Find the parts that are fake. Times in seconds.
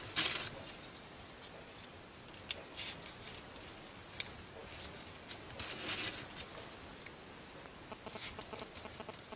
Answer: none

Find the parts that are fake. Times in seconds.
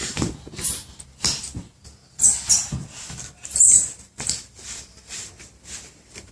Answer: 2.8-6.3 (vocoder, BigVGAN v2)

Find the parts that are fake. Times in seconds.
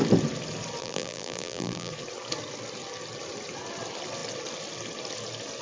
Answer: 0.8-1.9 (vocoder, BigVGAN v2)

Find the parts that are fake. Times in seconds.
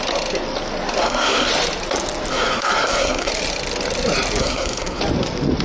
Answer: 1.0-1.5 (codec, SNAC); 2.3-3.3; 4.4-5.0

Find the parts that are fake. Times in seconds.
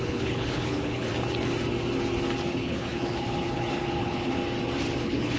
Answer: 0.0-1.1 (codec, HILCodec); 2.5-4.4; 5.0-5.4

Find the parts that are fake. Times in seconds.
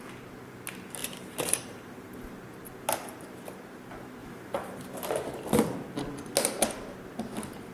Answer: 1.0-2.1 (vocoder, BigVGAN v2); 4.2-5.1